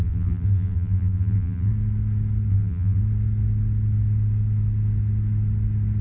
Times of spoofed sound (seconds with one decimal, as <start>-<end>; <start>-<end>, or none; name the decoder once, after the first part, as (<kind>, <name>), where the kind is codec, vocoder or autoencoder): 0.0-1.7 (vocoder, BigVGAN v2); 2.5-3.0